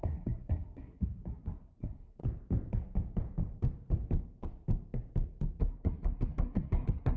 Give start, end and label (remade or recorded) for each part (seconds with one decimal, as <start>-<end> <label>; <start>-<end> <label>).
0.0-2.2 remade; 2.2-5.6 recorded; 5.6-7.2 remade